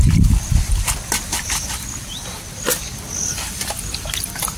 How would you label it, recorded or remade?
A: recorded